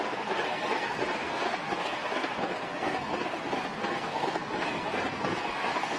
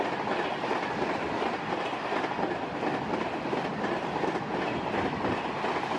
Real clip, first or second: second